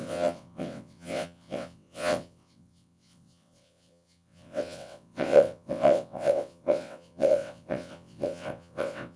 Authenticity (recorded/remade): remade